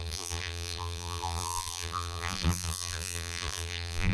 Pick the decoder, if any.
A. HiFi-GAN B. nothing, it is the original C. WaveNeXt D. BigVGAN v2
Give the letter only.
D